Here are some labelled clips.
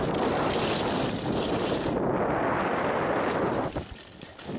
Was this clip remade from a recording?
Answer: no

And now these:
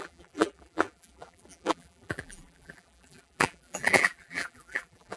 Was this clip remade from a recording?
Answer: yes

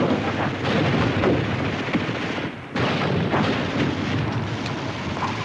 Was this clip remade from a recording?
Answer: no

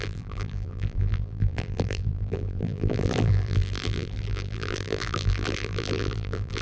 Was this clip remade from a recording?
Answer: yes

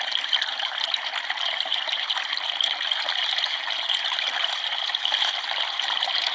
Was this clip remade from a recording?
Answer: yes